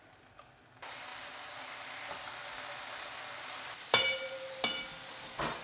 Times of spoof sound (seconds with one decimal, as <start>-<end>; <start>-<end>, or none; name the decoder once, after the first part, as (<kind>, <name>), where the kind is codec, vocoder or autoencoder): 1.1-4.5 (vocoder, BigVGAN v2)